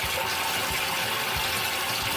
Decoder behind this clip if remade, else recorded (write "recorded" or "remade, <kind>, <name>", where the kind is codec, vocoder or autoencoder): recorded